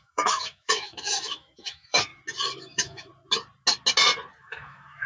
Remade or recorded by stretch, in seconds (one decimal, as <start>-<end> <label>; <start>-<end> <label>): 0.0-2.1 remade; 2.1-2.6 recorded; 2.6-3.1 remade; 3.1-4.4 recorded; 4.4-5.1 remade

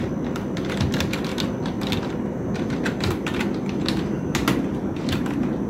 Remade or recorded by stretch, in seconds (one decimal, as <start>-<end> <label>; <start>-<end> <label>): 0.0-5.7 recorded

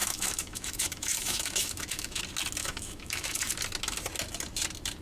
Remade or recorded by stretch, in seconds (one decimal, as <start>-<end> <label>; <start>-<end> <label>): 0.0-2.2 remade; 2.2-2.6 recorded; 2.6-3.5 remade; 3.5-5.0 recorded

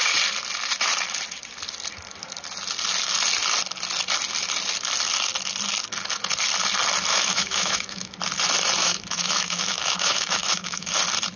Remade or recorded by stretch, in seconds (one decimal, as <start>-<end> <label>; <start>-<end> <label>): 0.0-7.1 recorded; 7.1-8.1 remade; 8.1-8.8 recorded; 8.8-10.9 remade; 10.9-11.4 recorded

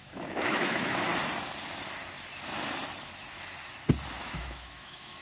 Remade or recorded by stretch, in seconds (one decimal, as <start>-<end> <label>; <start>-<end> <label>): 0.0-1.1 remade; 1.1-4.2 recorded; 4.2-5.2 remade

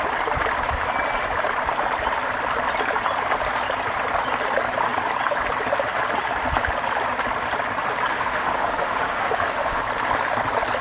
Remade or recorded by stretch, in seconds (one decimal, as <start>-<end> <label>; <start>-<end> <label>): 0.0-8.1 recorded; 8.1-9.8 remade; 9.8-10.8 recorded

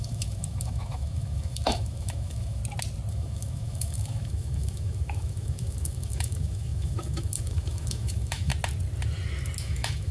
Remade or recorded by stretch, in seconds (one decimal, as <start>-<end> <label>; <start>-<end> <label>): 0.0-2.6 remade; 2.6-3.1 recorded; 3.1-8.5 remade; 8.5-9.6 recorded; 9.6-10.1 remade

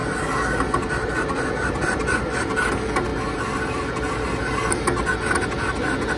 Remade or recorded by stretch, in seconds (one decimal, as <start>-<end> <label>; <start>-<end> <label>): 0.0-6.2 recorded